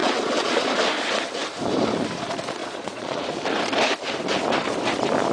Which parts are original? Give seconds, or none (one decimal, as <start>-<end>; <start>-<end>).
0.7-2.6; 3.2-5.3